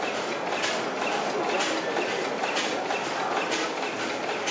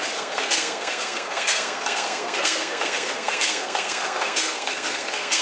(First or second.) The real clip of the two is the first